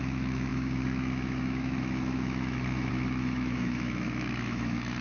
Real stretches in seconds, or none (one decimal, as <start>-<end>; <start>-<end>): none